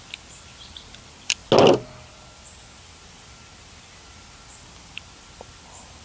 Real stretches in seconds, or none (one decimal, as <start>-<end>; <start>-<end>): 0.0-6.0